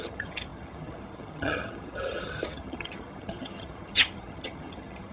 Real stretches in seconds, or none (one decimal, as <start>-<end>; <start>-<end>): none